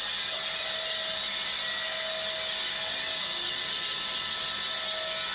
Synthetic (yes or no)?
no